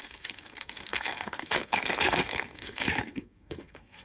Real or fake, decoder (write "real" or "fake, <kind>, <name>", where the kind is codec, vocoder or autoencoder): fake, codec, SNAC